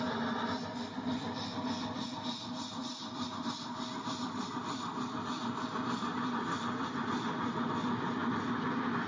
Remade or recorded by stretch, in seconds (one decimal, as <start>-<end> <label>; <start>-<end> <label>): 0.0-9.1 recorded